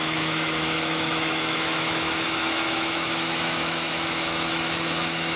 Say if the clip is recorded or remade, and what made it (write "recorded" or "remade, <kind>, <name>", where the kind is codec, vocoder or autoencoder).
remade, autoencoder, DAC-VAE